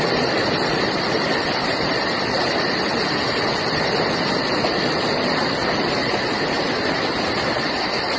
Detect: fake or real real